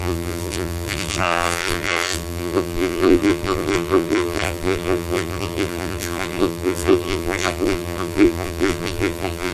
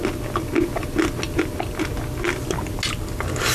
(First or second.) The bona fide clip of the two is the second